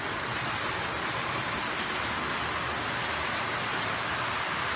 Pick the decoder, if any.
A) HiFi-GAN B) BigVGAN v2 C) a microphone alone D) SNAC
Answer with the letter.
C